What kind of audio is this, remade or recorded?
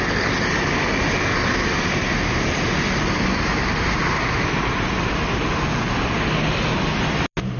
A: recorded